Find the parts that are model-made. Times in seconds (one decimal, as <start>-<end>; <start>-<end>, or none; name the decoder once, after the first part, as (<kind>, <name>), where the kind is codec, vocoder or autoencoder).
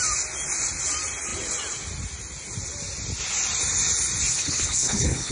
4.3-5.3 (codec, HILCodec)